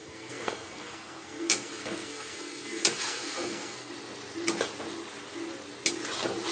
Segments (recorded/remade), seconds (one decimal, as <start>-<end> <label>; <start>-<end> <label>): 0.0-3.9 remade; 3.9-6.5 recorded